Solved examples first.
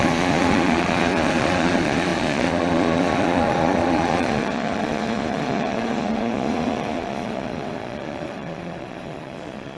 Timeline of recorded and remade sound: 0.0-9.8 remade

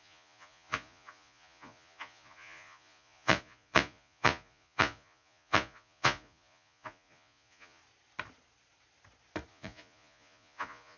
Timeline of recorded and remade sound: 0.0-7.8 remade; 7.8-9.5 recorded; 9.5-11.0 remade

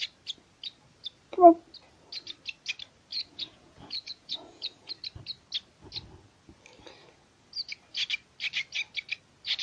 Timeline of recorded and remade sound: 0.0-3.1 recorded; 3.1-4.9 remade; 4.9-9.6 recorded

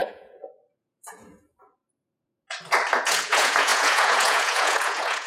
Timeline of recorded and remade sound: 0.0-1.8 remade; 1.8-3.0 recorded; 3.0-5.3 remade

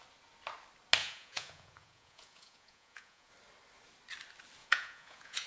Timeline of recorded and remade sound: 0.0-1.0 recorded; 1.0-3.3 remade; 3.3-4.6 recorded; 4.6-5.5 remade

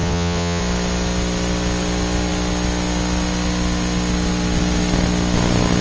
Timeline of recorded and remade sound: 0.0-0.6 remade; 0.6-5.8 recorded

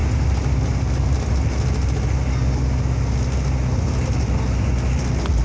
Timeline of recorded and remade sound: 0.0-5.4 recorded